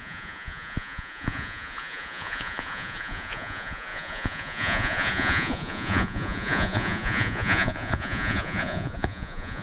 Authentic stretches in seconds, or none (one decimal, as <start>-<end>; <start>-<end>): none

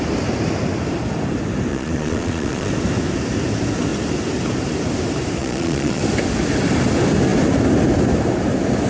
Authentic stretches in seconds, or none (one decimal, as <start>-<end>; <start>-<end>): 0.0-1.7; 2.7-5.4; 6.0-8.9

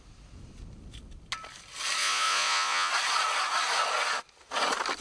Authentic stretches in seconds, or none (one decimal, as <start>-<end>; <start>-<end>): 0.0-2.0; 2.9-5.0